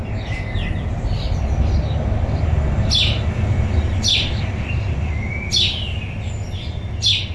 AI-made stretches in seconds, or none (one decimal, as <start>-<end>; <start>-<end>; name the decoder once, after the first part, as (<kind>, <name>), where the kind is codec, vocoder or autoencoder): none